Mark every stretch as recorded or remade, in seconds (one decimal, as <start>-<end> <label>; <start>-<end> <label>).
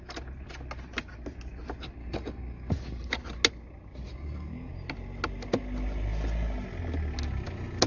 0.0-2.0 recorded; 2.0-2.7 remade; 2.7-4.1 recorded; 4.1-4.7 remade; 4.7-7.9 recorded